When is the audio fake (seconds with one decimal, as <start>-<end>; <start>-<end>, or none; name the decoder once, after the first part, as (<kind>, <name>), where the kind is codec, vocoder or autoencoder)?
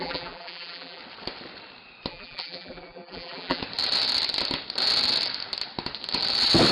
0.0-1.0 (vocoder, BigVGAN v2); 2.1-3.6